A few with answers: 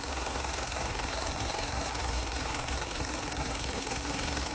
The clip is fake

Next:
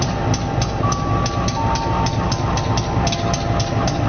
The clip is real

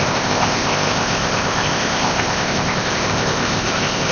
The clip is fake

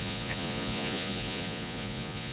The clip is fake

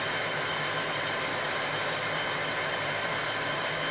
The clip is real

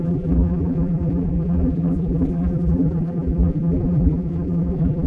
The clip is fake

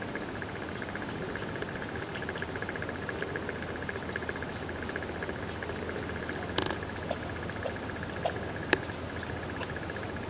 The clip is real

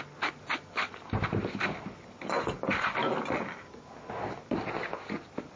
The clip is real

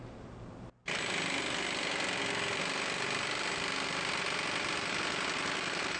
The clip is real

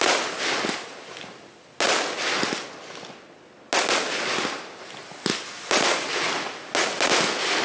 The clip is real